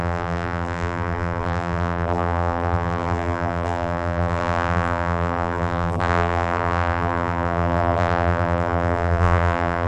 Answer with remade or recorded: remade